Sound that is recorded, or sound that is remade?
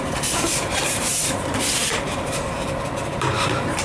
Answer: remade